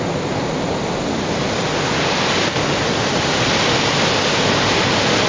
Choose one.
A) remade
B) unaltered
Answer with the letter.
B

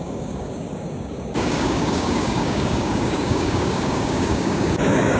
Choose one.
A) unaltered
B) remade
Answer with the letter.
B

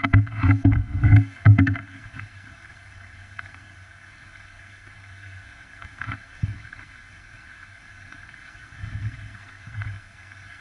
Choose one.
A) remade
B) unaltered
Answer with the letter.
A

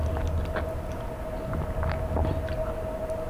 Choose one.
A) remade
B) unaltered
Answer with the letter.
B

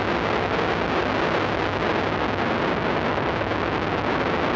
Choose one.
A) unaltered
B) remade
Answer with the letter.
A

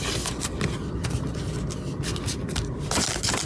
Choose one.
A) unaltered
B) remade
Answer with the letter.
B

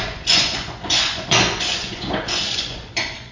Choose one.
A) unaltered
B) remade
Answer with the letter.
B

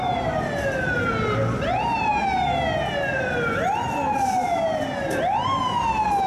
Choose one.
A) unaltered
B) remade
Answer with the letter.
A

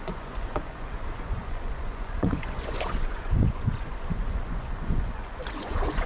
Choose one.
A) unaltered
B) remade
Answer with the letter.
B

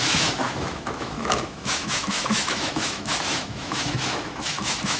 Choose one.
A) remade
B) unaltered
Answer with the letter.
A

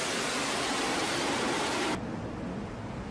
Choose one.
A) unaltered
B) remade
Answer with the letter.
A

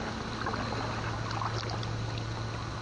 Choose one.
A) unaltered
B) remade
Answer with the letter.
A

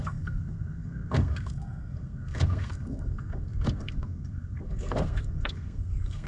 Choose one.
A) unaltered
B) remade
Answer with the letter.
B